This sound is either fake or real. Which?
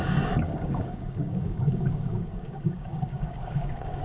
fake